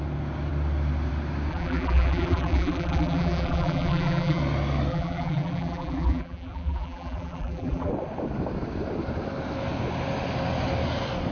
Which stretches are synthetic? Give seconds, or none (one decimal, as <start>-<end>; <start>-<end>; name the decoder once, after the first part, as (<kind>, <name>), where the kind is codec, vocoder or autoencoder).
1.5-4.4 (vocoder, BigVGAN v2); 4.9-7.9